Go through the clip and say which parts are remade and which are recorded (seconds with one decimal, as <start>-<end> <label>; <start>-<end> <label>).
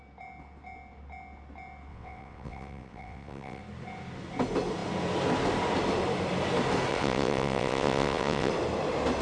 0.0-1.9 recorded; 1.9-3.6 remade; 3.6-6.9 recorded; 6.9-8.5 remade; 8.5-9.2 recorded